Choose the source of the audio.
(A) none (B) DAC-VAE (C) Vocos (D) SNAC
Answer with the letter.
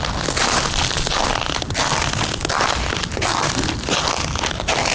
A